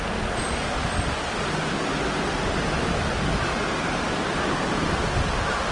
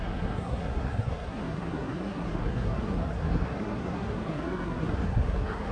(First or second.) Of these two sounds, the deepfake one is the second